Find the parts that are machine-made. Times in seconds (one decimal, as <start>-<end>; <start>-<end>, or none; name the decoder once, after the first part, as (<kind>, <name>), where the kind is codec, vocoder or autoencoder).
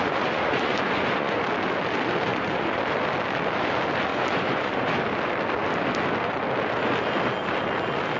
0.0-1.4 (vocoder, Vocos); 2.3-2.8; 4.1-4.9